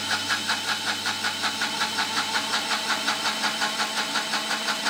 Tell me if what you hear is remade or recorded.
recorded